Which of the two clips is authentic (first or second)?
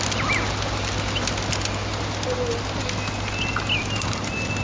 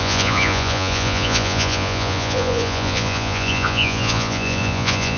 first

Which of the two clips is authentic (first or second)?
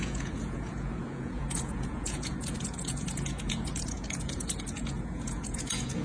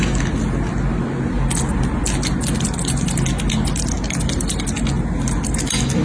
second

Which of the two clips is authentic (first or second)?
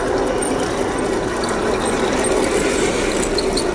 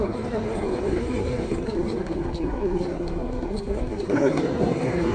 first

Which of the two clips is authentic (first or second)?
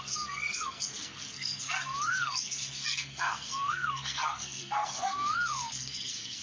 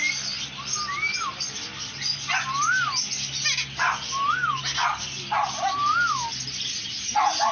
second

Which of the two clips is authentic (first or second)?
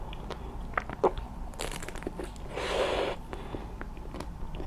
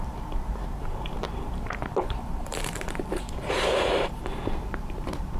first